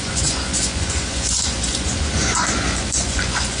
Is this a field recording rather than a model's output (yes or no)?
no